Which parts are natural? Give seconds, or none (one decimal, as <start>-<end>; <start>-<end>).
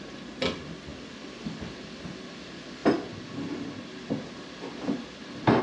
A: 0.0-5.6